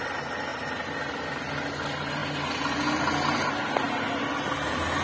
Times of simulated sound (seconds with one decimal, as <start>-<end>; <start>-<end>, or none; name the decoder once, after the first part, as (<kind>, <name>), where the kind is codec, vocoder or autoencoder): none